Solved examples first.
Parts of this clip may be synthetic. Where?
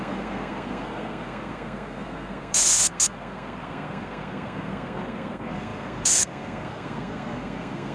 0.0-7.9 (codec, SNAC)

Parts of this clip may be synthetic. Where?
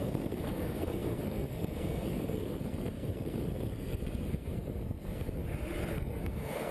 0.0-5.4 (codec, SNAC); 5.9-6.7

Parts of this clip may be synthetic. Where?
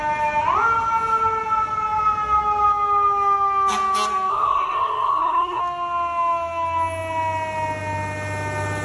4.3-5.6 (codec, SNAC)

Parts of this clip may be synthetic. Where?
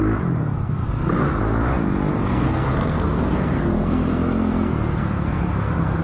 0.4-1.4 (codec, SNAC); 2.1-6.0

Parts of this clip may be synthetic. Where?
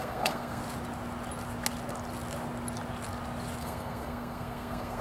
0.0-0.6 (codec, SNAC); 3.6-5.0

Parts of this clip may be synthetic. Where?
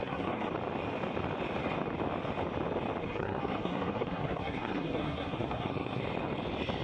0.0-0.5 (codec, SNAC); 3.0-6.0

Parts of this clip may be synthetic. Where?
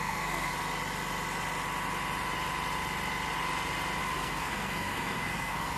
0.0-0.5 (codec, SNAC); 4.0-5.8